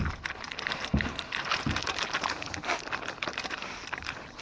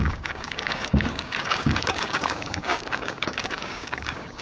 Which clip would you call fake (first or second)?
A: second